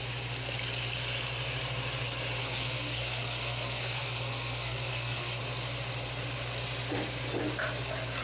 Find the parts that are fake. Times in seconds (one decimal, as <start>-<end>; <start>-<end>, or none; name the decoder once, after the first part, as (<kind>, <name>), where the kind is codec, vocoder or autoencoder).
2.4-5.4 (codec, SNAC)